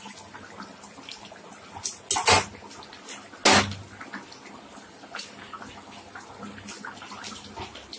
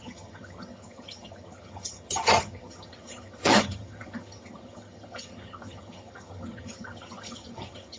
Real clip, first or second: first